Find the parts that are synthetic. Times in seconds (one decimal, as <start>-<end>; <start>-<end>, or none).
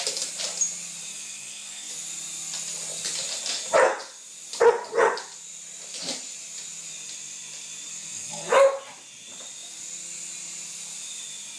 1.1-1.9; 7.9-8.5